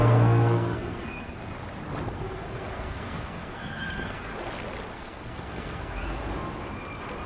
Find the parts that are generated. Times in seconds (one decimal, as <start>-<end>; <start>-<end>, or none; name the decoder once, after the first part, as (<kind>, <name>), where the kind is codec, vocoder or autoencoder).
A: 0.0-1.4 (codec, SNAC); 2.1-4.3; 4.9-6.2